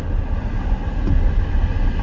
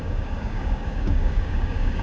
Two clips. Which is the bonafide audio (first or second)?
first